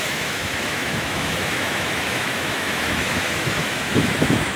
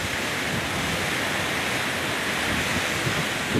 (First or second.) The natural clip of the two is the second